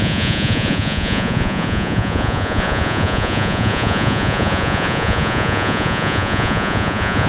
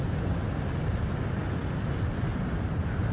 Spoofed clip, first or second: first